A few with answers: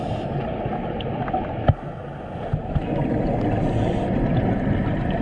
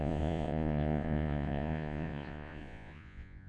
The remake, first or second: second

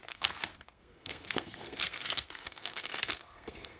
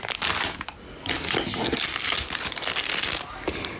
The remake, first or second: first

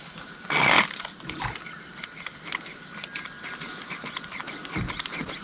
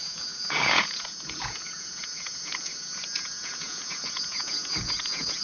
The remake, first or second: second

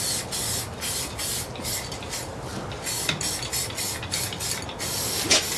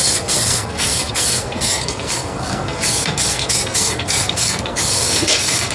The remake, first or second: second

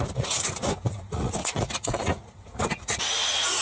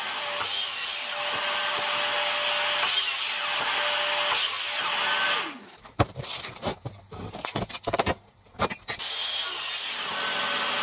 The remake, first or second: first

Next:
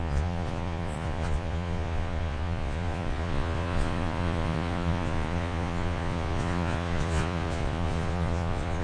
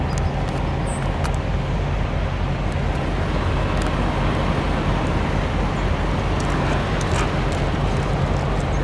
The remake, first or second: first